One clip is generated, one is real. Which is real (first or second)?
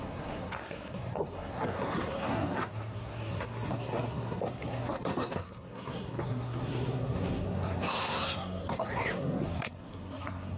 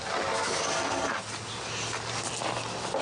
second